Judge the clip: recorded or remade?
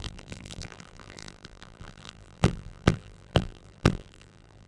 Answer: remade